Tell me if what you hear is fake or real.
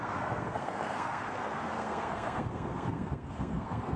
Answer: fake